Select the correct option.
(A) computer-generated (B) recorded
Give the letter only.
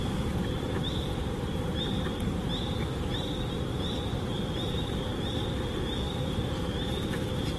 A